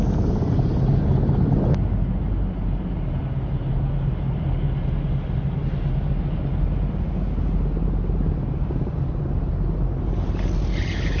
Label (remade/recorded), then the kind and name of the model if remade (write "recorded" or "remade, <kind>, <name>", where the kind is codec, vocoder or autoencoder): recorded